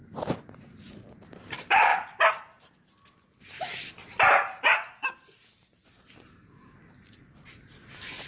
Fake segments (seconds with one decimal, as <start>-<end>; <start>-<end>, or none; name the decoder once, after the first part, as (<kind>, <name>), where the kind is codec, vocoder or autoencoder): 1.1-8.3 (vocoder, BigVGAN v2)